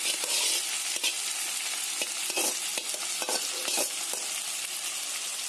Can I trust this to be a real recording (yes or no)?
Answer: yes